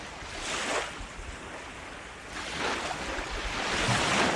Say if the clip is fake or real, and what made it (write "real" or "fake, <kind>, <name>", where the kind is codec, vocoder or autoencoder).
real